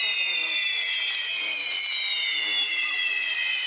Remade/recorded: remade